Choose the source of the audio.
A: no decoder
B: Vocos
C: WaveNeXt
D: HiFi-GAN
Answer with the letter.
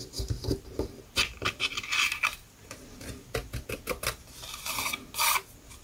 A